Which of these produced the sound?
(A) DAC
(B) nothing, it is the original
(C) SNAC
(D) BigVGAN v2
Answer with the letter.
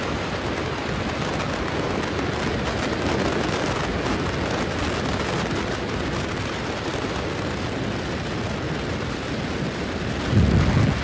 B